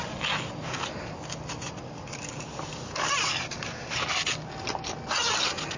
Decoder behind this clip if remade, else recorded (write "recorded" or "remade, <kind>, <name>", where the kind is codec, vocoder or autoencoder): recorded